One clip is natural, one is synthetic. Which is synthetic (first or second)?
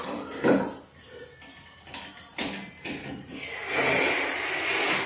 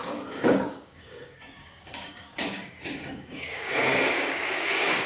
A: second